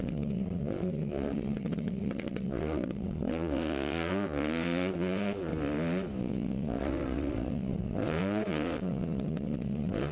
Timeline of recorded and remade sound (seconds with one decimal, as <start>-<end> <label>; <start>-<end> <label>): 0.0-5.5 remade; 5.5-6.2 recorded; 6.2-10.1 remade